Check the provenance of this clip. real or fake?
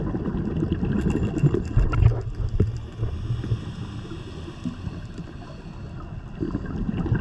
real